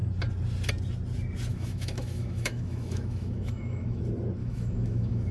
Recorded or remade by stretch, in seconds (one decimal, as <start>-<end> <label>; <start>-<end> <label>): 0.0-1.5 recorded; 1.5-4.0 remade; 4.0-4.4 recorded; 4.4-5.3 remade